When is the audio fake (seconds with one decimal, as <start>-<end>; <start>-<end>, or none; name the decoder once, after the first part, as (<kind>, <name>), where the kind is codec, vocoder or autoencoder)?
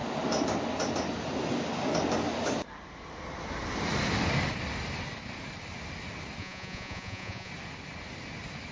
6.4-7.5 (vocoder, Vocos)